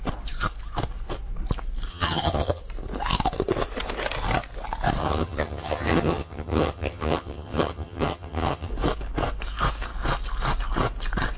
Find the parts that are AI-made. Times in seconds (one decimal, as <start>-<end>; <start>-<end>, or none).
1.9-2.6; 5.0-8.7